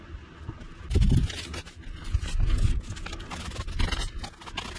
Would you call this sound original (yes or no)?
yes